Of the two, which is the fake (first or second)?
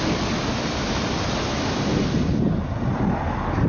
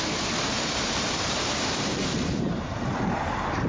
second